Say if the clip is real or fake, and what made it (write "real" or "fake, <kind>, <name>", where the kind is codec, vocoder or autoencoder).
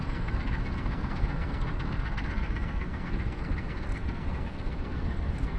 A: fake, codec, SNAC